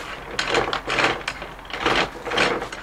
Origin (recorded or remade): recorded